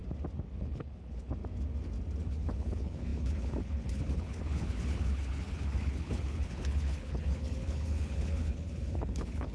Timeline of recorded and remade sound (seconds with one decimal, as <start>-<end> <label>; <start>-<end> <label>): 0.0-0.6 recorded; 0.6-1.4 remade; 1.4-2.2 recorded; 2.2-9.5 remade